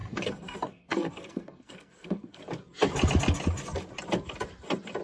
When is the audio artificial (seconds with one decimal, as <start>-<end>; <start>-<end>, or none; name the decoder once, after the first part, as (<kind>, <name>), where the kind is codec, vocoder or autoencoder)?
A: 0.0-2.4 (codec, SNAC)